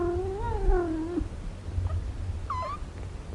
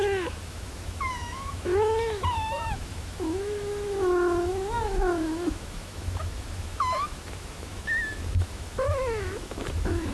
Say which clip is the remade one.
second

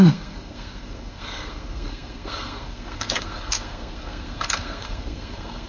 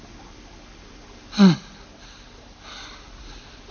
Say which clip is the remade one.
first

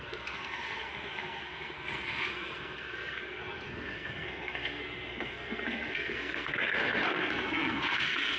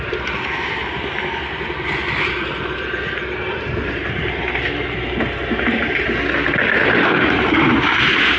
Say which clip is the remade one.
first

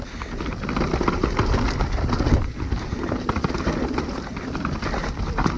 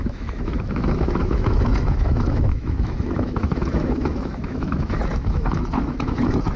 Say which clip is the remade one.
second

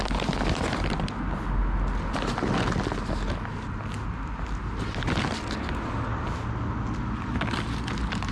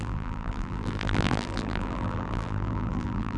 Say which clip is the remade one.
second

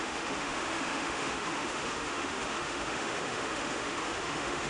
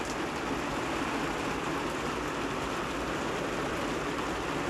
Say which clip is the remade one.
first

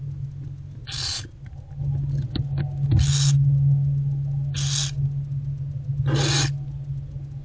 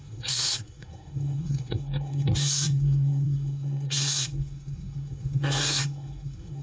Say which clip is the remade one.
second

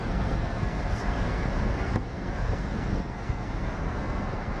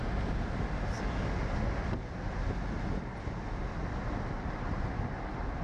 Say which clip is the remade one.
first